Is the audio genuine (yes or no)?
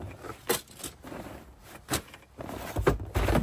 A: yes